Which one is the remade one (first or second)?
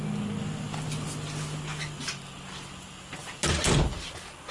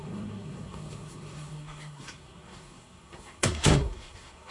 second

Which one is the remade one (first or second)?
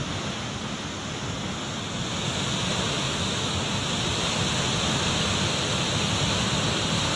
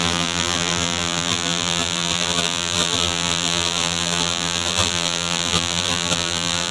second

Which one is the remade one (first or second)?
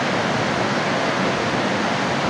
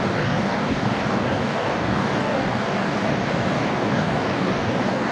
second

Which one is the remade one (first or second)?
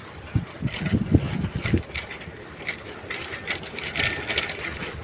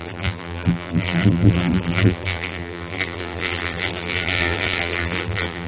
second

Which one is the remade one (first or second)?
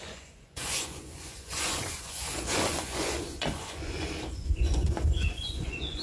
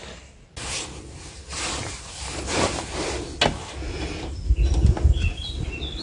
first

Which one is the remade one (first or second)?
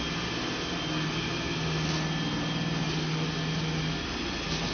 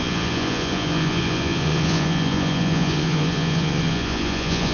second